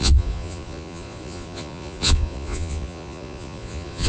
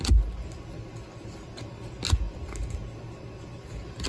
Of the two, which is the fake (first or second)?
first